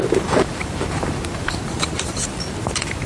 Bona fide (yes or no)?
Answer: no